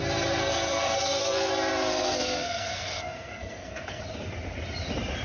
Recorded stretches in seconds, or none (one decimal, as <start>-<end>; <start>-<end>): 0.0-0.4; 1.5-1.9; 4.0-5.2